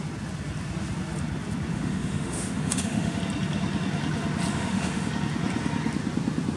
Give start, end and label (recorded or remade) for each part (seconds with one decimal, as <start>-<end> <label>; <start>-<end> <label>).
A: 0.0-1.7 recorded; 1.7-3.2 remade; 3.2-4.5 recorded; 4.5-5.1 remade; 5.1-6.6 recorded